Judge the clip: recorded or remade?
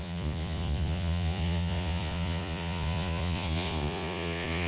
remade